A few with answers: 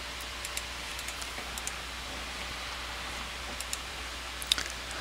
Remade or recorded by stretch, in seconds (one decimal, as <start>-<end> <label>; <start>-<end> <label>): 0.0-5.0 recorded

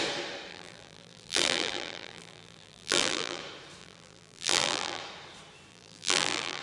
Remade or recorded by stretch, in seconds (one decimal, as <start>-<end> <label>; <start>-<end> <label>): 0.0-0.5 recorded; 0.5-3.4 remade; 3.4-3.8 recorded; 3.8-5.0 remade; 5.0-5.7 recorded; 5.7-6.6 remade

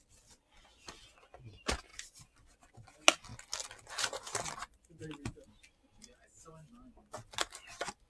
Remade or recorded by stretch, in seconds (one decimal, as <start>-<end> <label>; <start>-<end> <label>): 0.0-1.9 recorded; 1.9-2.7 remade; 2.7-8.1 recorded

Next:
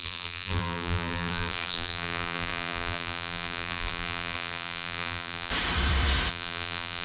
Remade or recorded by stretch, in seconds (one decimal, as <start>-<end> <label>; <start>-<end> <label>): 0.0-5.5 remade; 5.5-6.3 recorded; 6.3-7.0 remade